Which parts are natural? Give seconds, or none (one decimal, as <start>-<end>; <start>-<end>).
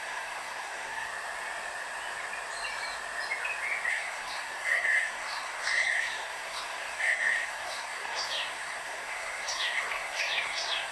1.1-3.9